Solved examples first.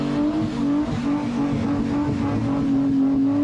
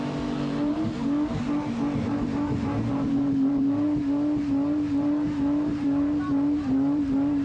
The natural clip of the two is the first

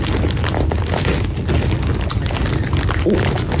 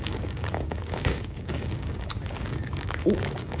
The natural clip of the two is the first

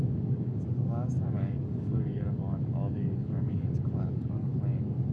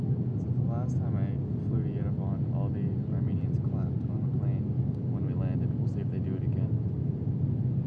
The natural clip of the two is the second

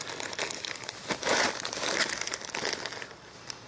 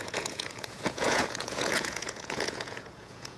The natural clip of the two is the first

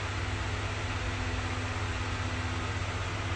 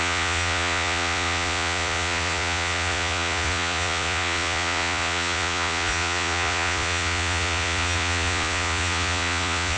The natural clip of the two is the first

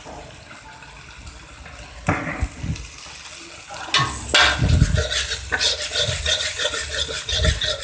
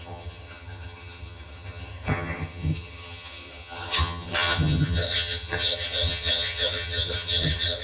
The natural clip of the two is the first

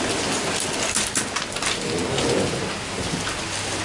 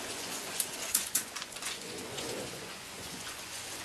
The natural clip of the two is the first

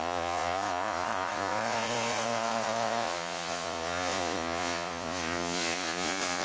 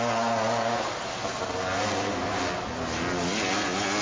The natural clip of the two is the second